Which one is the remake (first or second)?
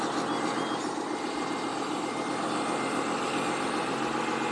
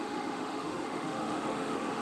second